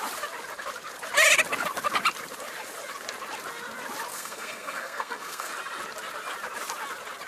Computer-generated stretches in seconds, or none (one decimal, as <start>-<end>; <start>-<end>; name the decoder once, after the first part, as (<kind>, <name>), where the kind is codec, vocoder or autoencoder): 4.1-5.5 (codec, SNAC)